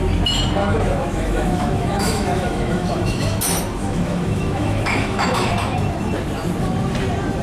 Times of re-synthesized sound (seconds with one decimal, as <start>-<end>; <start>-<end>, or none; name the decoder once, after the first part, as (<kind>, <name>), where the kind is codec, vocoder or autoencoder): 0.6-3.4 (autoencoder, DAC-VAE); 3.8-5.5